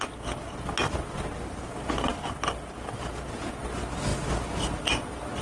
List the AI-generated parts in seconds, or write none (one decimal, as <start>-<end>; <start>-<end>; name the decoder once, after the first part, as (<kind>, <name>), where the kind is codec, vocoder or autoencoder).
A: none